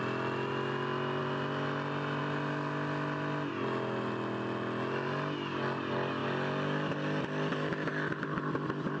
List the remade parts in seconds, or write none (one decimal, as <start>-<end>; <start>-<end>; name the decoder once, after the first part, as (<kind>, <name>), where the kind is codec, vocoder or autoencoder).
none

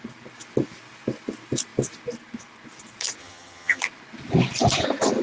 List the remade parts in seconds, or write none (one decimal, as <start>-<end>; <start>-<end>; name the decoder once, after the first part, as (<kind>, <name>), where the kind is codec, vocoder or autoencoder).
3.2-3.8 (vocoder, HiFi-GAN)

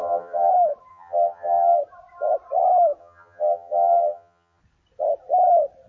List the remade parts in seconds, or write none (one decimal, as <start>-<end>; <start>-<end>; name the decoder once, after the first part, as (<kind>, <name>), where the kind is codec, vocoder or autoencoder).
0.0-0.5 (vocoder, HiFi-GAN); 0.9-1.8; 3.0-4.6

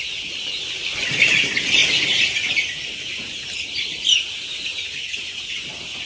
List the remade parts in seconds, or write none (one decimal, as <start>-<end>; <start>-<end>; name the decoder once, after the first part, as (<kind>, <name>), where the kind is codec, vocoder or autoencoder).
none

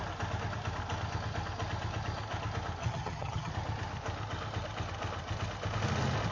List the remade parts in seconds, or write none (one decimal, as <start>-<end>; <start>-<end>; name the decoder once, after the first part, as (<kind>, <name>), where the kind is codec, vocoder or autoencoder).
2.8-3.5 (vocoder, HiFi-GAN)